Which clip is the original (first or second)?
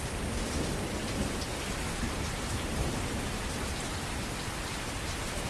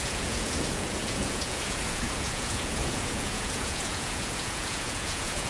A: first